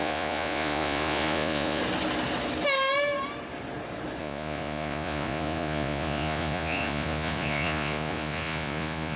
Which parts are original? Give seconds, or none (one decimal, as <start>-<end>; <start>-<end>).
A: 1.8-4.2